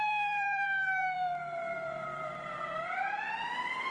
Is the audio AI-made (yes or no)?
yes